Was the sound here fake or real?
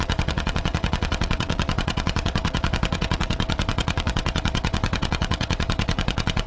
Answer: fake